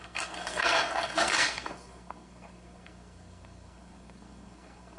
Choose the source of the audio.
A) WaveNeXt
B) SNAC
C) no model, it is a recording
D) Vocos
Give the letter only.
B